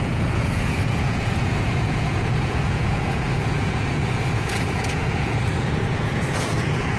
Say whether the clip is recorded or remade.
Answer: remade